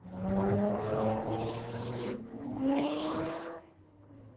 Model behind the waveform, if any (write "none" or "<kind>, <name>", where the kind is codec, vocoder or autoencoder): codec, HILCodec